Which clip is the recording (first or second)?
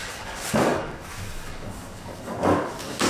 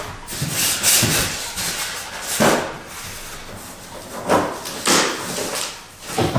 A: second